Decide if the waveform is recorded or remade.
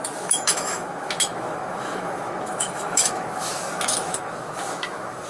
remade